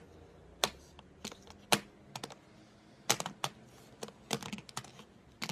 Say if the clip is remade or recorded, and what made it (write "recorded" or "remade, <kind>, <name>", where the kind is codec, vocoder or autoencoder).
recorded